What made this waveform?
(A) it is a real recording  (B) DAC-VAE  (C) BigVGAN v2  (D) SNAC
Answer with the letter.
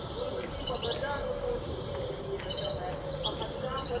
C